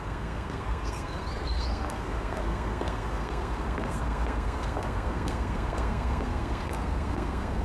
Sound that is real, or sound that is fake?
fake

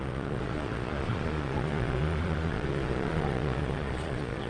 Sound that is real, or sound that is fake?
fake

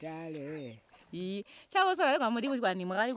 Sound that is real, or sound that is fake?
real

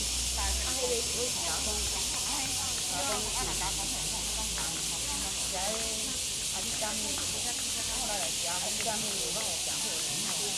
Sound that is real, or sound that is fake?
real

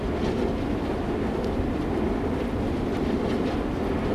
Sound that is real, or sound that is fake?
real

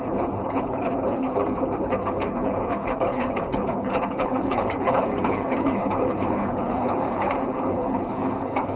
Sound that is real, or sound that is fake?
fake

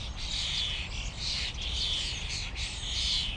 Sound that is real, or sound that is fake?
real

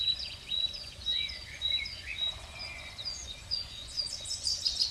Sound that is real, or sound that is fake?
fake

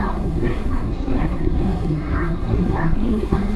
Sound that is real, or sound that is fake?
fake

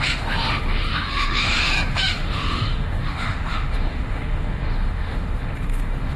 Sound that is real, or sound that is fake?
fake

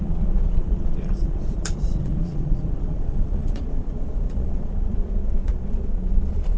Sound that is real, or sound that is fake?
fake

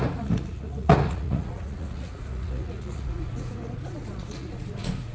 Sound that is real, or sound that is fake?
fake